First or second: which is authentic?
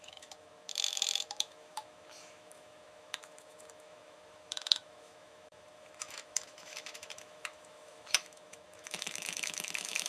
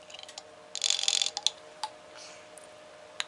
second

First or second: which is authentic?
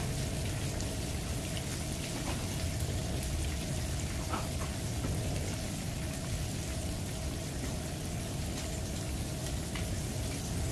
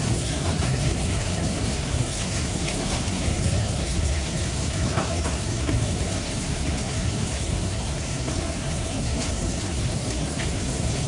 first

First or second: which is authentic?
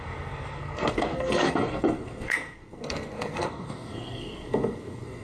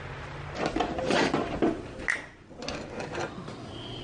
second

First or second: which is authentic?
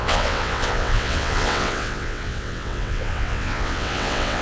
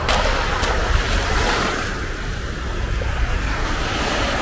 second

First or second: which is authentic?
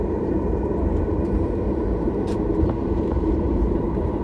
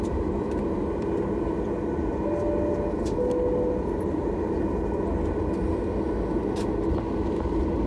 second